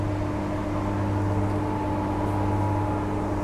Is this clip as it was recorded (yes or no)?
yes